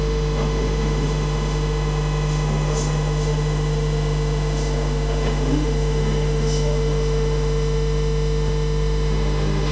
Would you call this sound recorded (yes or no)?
no